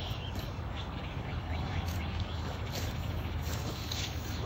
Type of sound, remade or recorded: remade